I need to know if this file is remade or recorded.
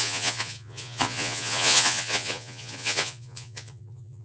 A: remade